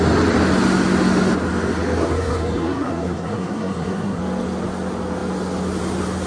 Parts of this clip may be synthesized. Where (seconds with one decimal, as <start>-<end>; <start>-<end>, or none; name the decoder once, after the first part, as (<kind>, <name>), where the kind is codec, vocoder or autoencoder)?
2.0-4.2 (codec, SNAC)